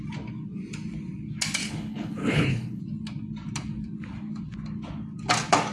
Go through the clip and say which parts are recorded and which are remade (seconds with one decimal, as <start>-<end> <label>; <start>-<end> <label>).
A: 0.0-1.6 recorded; 1.6-2.8 remade; 2.8-5.7 recorded